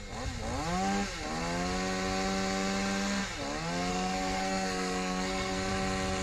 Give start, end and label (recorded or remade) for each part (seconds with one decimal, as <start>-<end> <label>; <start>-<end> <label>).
0.0-3.9 recorded; 3.9-5.7 remade; 5.7-6.2 recorded